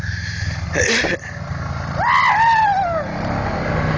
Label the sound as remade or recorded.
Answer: recorded